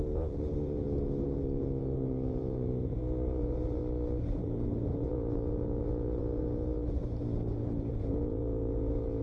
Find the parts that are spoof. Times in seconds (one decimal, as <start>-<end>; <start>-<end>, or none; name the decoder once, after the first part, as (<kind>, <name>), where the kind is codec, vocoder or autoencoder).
0.0-3.8 (vocoder, Vocos); 4.4-9.2